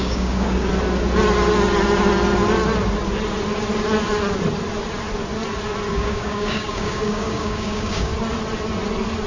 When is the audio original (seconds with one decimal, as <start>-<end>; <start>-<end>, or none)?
0.7-5.9; 8.1-9.3